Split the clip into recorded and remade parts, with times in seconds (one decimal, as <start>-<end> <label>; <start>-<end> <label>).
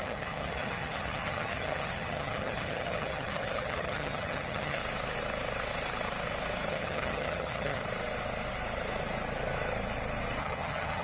0.0-4.8 remade; 4.8-6.7 recorded; 6.7-7.8 remade; 7.8-10.4 recorded; 10.4-11.0 remade